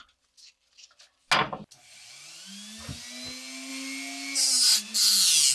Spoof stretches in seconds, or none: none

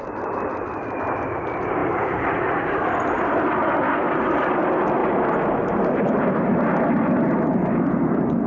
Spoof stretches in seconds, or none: none

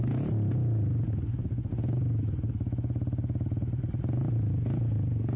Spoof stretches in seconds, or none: none

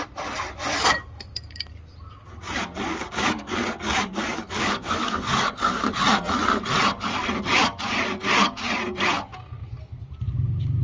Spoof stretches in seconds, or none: 2.9-5.9 (codec, DAC)

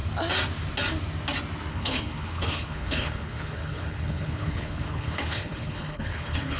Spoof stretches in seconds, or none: 1.7-6.6 (codec, HILCodec)

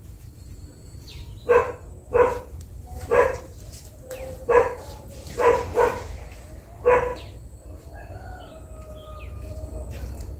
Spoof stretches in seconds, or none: 0.0-1.6 (vocoder, BigVGAN v2); 2.1-7.1; 8.9-10.4